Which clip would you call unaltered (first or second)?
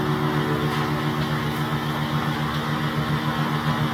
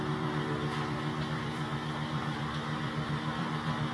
first